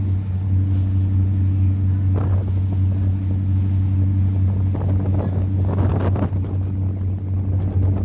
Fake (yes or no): no